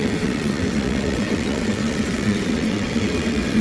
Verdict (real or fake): fake